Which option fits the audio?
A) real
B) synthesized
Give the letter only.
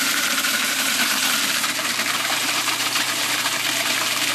B